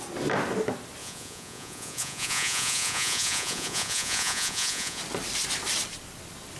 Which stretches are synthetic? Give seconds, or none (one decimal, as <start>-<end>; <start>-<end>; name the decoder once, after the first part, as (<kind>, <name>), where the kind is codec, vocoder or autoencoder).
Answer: 1.0-5.0 (vocoder, Vocos)